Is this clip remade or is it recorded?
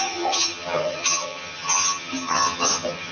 remade